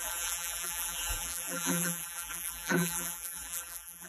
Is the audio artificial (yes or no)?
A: yes